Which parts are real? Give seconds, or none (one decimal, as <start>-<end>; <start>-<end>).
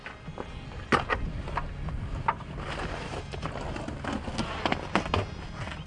0.0-5.9